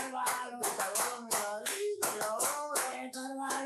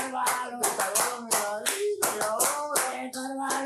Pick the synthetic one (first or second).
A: first